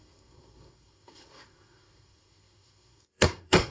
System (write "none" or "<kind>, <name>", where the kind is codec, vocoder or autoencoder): codec, SNAC